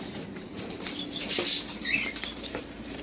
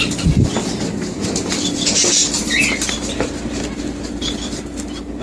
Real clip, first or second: second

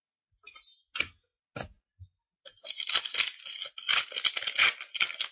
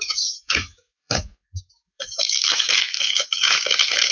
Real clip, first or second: first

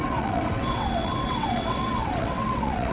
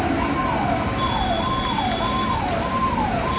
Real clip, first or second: second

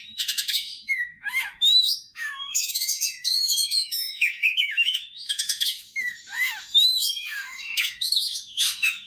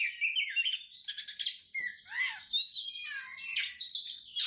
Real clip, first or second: second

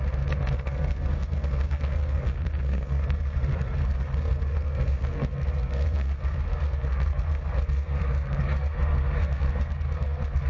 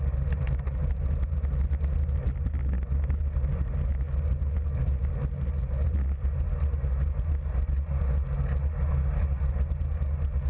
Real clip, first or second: second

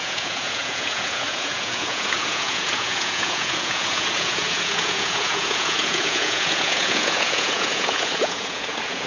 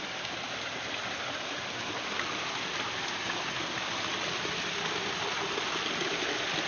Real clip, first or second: second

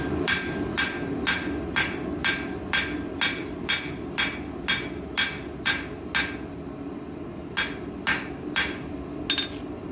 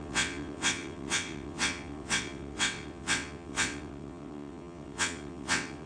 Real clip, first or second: first